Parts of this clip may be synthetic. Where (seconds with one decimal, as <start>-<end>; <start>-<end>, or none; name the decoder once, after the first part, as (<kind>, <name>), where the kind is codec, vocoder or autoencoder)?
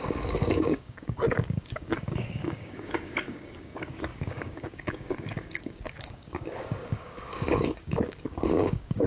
0.0-9.1 (codec, DAC)